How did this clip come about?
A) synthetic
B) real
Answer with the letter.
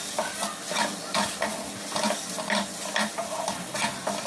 B